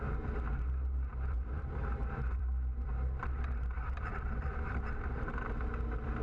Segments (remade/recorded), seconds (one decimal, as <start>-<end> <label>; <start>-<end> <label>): 0.0-1.1 recorded; 1.1-3.4 remade; 3.4-4.1 recorded; 4.1-5.3 remade; 5.3-6.2 recorded